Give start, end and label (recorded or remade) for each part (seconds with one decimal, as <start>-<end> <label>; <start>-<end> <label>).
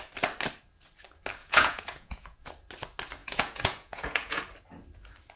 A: 0.0-1.4 recorded; 1.4-2.5 remade; 2.5-3.2 recorded; 3.2-4.4 remade; 4.4-5.4 recorded